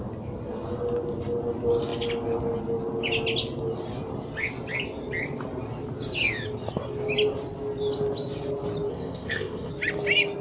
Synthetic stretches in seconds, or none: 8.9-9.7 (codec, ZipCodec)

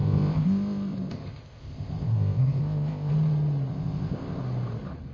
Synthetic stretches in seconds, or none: 0.0-3.1 (codec, ZipCodec); 3.7-4.4